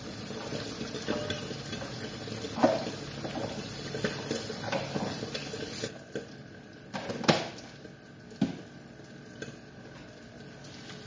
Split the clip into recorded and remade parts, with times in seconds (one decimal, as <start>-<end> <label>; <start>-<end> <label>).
0.0-11.1 recorded